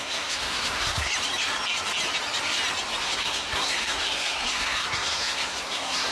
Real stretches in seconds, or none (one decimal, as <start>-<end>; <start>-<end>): 1.1-3.0